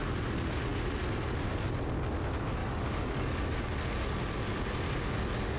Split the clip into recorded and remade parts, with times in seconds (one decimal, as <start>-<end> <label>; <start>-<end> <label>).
0.0-2.6 recorded; 2.6-3.4 remade; 3.4-5.6 recorded